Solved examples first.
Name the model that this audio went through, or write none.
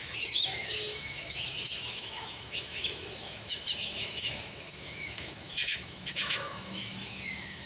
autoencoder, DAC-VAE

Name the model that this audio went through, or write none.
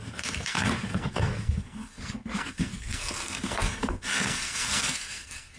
codec, SNAC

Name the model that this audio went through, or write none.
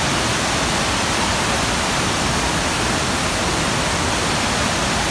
none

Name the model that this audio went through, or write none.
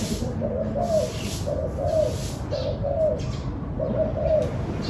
none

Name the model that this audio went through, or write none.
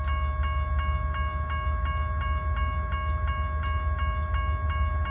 none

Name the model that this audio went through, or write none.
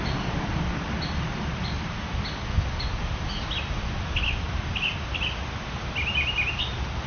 none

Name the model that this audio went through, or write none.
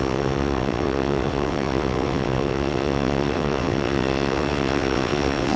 vocoder, WaveNeXt